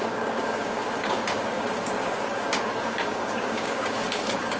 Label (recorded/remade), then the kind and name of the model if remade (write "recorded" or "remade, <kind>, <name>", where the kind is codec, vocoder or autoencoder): remade, codec, DAC